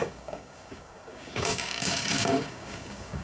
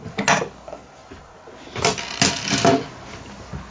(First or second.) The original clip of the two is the second